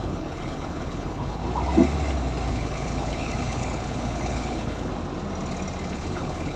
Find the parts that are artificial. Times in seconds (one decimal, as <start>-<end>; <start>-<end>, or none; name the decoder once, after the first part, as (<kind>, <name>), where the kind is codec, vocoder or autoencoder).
0.0-1.4 (codec, HILCodec); 2.5-4.9; 5.8-6.6